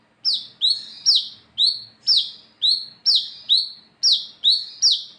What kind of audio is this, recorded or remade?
recorded